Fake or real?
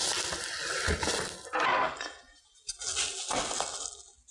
real